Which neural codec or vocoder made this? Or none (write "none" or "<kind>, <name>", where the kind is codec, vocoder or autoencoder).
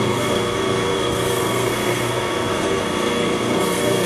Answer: codec, SNAC